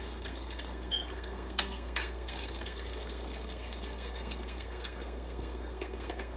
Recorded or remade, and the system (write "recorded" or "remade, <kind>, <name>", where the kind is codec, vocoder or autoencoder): remade, codec, SNAC